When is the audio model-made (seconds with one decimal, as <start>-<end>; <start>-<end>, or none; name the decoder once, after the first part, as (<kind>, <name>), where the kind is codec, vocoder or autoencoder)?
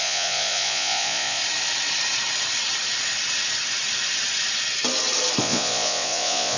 0.0-1.4 (vocoder, Vocos); 5.4-6.6